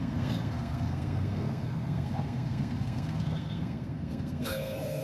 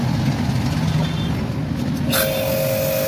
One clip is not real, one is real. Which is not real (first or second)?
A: first